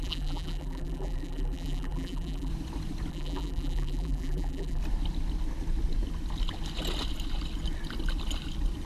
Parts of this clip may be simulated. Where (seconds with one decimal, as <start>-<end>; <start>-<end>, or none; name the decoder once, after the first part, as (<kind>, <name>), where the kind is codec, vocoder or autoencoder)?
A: 0.0-2.5 (vocoder, BigVGAN v2); 3.1-4.8